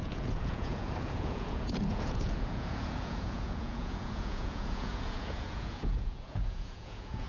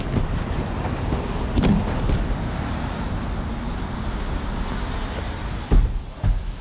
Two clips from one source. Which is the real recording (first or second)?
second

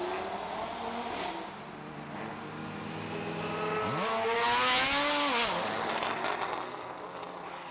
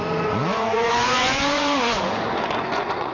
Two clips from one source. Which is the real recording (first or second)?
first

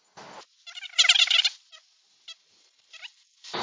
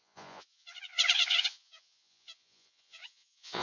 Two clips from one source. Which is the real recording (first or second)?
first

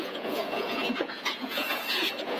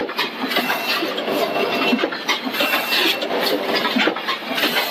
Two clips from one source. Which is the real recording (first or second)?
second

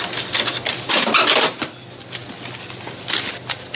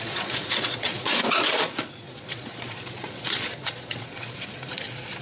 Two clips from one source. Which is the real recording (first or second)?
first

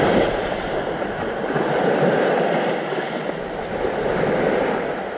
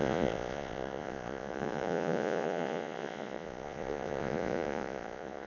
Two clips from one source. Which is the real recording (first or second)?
first